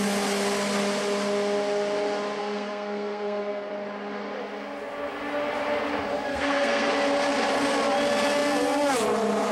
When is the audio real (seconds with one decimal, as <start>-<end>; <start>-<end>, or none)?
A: 0.0-2.4; 3.7-6.3; 6.9-9.5